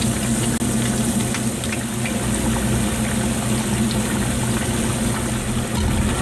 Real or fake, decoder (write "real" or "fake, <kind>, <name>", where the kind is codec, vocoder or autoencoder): real